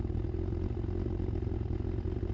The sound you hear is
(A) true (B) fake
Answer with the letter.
A